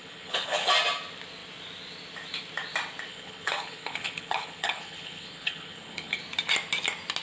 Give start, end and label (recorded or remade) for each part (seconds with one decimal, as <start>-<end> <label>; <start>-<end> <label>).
0.0-0.7 remade; 0.7-3.1 recorded; 3.1-6.2 remade; 6.2-7.2 recorded